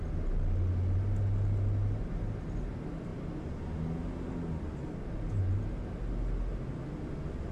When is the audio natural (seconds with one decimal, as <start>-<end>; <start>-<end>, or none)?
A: 0.0-7.5